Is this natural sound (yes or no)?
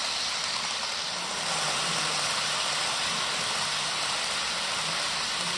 yes